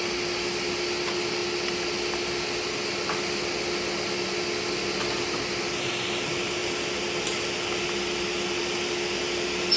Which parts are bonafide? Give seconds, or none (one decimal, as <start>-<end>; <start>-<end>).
0.0-9.8